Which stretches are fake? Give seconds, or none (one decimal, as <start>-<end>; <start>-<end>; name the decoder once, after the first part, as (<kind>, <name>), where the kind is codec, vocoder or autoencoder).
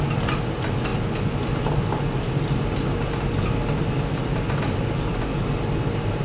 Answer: 4.3-5.2 (vocoder, BigVGAN v2)